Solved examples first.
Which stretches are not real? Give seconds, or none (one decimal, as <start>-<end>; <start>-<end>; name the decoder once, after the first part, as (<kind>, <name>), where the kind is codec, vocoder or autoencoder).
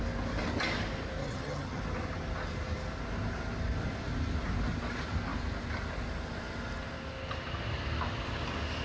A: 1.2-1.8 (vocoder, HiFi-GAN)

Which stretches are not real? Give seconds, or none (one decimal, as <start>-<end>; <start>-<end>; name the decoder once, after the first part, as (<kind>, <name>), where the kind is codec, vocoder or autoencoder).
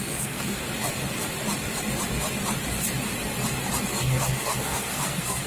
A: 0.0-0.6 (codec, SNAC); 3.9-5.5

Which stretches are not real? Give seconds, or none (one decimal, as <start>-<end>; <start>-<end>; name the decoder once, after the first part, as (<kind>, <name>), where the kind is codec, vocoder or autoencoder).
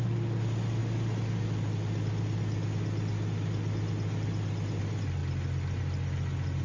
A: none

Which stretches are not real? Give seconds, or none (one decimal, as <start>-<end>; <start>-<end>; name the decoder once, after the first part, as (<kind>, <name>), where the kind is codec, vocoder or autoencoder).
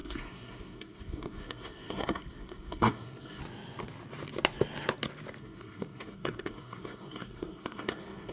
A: 0.0-3.4 (codec, SNAC); 5.4-8.3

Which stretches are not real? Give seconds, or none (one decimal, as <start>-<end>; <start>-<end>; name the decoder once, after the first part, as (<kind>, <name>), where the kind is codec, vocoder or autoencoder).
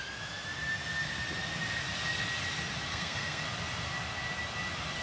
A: 2.9-3.4 (codec, SNAC)